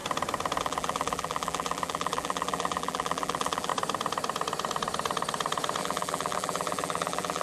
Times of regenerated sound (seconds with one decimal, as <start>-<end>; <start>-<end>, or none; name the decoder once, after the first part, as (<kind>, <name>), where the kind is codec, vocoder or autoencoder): 0.6-3.7 (vocoder, BigVGAN v2); 5.8-7.4